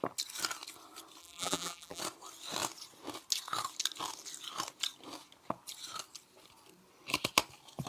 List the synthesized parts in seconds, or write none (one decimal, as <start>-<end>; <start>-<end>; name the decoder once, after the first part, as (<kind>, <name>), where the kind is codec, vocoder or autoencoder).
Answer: 1.2-2.0 (vocoder, BigVGAN v2)